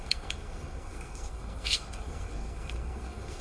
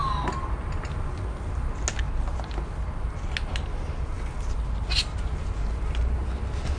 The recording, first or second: second